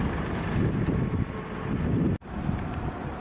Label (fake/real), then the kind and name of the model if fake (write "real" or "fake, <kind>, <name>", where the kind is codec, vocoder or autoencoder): real